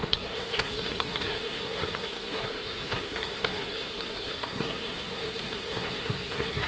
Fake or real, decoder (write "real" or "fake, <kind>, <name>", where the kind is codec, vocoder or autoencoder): fake, codec, SNAC